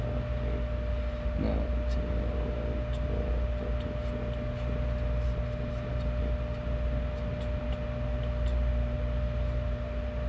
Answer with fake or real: real